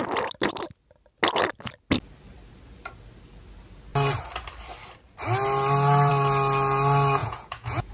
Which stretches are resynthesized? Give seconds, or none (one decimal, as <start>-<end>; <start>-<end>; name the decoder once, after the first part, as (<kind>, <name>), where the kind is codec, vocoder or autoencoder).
7.2-7.9 (vocoder, Vocos)